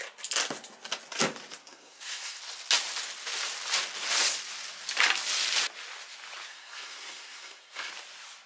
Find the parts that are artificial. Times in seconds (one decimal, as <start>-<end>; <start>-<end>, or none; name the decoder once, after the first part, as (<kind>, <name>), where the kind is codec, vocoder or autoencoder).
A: 1.6-2.4 (codec, SNAC); 6.5-7.9

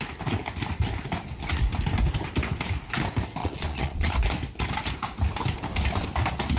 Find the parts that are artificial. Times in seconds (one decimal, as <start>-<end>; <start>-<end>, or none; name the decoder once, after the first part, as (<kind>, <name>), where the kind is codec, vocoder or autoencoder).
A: 3.4-4.1 (vocoder, Vocos)

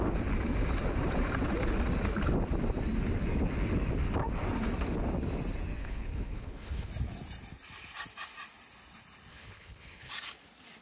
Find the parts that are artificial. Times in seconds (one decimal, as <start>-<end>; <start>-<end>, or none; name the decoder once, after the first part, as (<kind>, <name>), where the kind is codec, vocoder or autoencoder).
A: 5.8-6.9 (codec, HILCodec); 9.3-10.1